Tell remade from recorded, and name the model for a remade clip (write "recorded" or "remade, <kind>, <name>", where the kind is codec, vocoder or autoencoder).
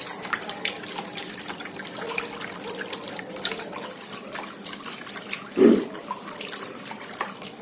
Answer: recorded